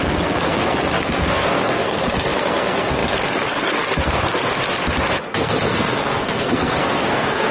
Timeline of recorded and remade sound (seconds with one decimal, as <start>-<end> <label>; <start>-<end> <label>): 0.0-4.5 remade; 4.5-5.3 recorded; 5.3-7.5 remade